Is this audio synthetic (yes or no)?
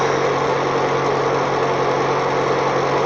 no